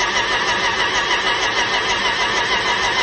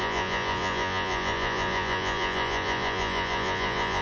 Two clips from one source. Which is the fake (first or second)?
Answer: second